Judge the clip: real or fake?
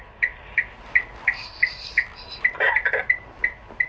real